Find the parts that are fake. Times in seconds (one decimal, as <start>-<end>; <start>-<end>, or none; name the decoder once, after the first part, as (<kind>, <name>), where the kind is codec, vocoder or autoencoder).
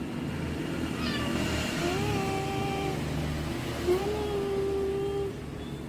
none